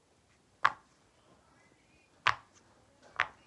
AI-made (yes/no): no